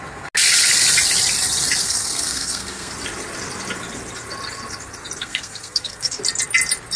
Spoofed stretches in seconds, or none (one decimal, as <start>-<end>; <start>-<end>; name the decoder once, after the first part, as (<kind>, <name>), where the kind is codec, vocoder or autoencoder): 1.8-2.9 (codec, SNAC); 5.2-6.2